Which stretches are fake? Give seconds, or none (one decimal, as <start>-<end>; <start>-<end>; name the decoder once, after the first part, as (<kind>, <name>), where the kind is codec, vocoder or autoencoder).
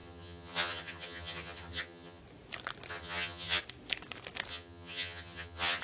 0.0-2.2 (vocoder, HiFi-GAN); 2.9-3.6; 4.5-5.8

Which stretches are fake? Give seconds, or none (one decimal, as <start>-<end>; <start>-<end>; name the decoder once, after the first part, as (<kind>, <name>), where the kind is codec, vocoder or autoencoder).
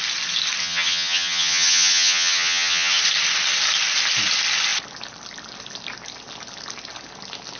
0.6-3.0 (vocoder, HiFi-GAN)